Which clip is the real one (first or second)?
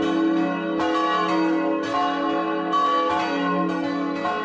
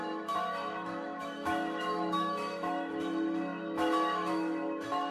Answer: first